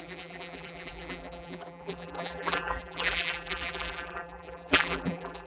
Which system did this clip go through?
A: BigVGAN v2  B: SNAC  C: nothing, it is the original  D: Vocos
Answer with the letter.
A